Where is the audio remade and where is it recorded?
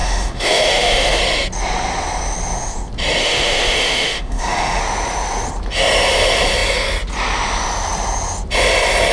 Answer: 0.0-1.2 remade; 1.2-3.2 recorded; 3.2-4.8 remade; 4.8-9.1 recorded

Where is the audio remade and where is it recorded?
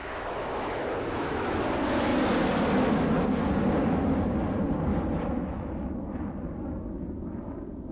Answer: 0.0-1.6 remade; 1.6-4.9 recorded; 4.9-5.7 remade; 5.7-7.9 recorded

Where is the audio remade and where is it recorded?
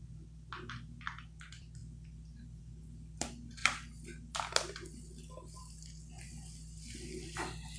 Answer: 0.0-7.8 recorded